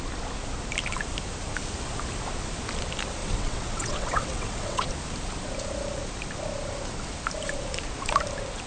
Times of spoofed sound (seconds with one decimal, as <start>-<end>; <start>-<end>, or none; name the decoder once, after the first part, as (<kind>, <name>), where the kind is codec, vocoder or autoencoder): 3.2-4.9 (vocoder, WaveNeXt)